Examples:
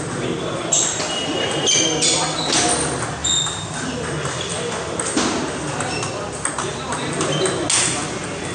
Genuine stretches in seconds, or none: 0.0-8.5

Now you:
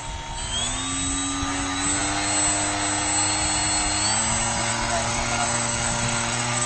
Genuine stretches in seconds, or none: 0.0-4.7

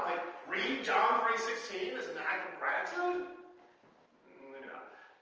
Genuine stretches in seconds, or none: 0.0-5.2

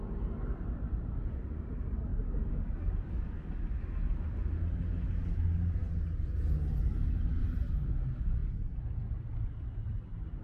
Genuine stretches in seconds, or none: 0.0-2.1; 3.5-10.4

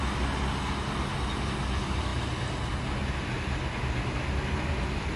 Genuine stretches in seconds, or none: 0.0-5.2

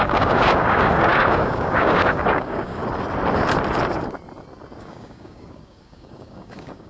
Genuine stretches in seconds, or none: 2.8-4.8